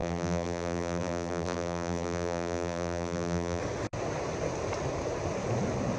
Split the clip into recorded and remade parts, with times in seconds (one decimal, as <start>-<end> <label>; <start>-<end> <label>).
0.0-3.6 remade; 3.6-6.0 recorded